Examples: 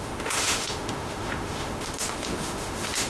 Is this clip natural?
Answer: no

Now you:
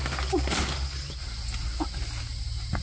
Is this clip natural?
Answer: yes